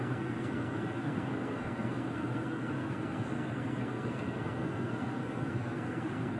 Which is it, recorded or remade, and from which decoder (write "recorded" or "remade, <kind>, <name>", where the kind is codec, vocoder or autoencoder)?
remade, codec, SNAC